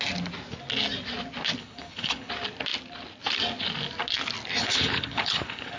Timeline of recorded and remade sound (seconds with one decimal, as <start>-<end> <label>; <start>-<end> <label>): 0.0-1.6 recorded; 1.6-2.3 remade; 2.3-4.6 recorded; 4.6-5.8 remade